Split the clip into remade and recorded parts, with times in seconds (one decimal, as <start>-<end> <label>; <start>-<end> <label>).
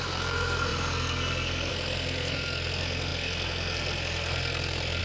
0.0-5.0 remade